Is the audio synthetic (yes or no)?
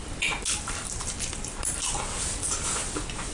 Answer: no